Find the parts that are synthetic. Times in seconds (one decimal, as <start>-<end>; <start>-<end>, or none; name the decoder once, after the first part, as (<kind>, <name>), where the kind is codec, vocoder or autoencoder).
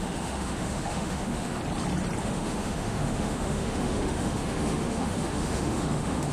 0.0-1.6 (autoencoder, DAC-VAE); 2.2-6.3